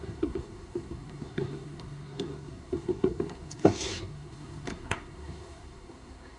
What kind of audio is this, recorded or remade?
remade